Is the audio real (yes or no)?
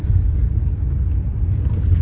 yes